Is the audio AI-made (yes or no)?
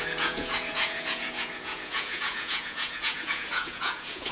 yes